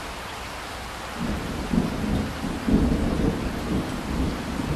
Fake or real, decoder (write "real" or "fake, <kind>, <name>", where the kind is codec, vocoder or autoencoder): real